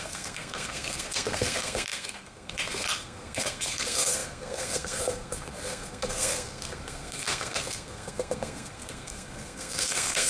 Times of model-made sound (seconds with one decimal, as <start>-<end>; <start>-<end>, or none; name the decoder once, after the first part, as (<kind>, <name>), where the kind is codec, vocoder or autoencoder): 0.0-10.3 (codec, SNAC)